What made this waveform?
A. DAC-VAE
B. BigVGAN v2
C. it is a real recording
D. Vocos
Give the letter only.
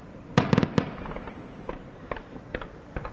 C